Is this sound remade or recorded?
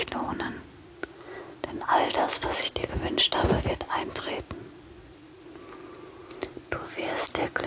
recorded